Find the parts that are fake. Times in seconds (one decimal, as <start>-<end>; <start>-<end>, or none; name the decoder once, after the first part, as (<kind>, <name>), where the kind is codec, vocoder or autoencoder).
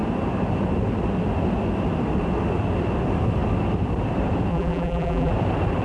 4.5-5.3 (vocoder, BigVGAN v2)